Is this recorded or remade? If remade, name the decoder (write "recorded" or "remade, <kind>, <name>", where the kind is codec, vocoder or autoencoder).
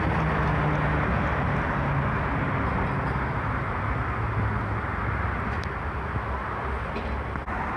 recorded